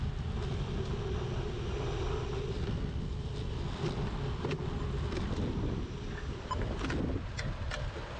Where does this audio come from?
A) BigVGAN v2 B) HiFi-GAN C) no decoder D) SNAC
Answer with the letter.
C